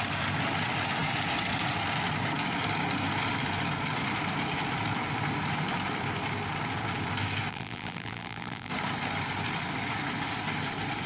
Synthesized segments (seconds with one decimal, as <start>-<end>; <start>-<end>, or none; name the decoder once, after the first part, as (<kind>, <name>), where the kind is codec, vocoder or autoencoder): 7.5-8.7 (vocoder, BigVGAN v2)